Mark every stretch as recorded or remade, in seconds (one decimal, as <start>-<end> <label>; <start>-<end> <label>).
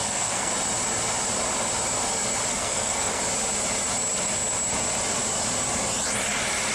0.0-0.5 remade; 0.5-2.5 recorded; 2.5-3.2 remade; 3.2-6.7 recorded